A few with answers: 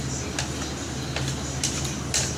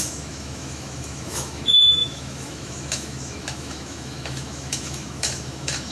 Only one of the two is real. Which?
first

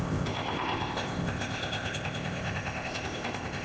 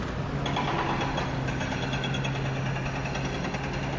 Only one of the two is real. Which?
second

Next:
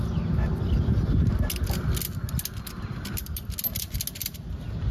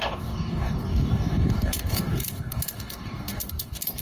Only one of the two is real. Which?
first